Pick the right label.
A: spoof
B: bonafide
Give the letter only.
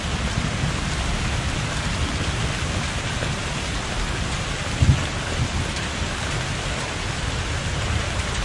B